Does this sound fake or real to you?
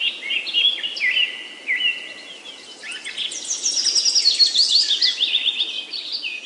real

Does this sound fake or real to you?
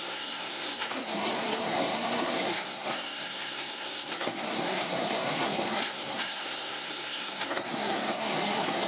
fake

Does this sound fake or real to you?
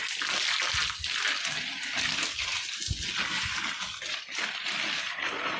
real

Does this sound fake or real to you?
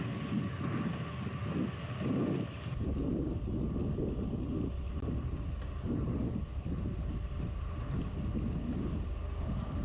real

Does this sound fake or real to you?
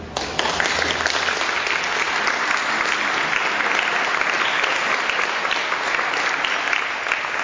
real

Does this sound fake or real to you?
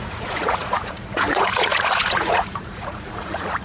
fake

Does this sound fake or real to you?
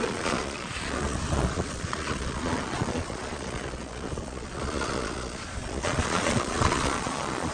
fake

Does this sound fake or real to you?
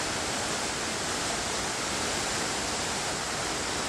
real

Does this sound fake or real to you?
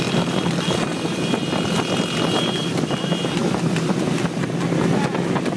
real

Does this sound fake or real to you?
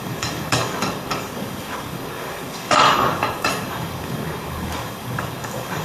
fake